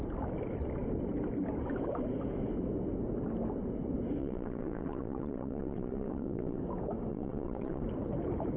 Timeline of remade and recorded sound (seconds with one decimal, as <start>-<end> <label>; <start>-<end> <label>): 0.0-4.2 recorded; 4.2-6.6 remade; 6.6-7.1 recorded; 7.1-7.8 remade; 7.8-8.6 recorded